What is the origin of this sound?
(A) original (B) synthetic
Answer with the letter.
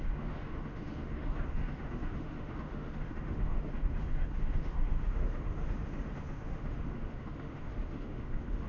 B